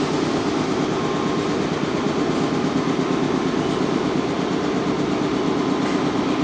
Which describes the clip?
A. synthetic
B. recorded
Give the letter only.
B